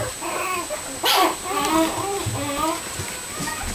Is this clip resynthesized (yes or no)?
no